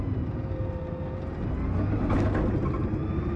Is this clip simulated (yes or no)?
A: no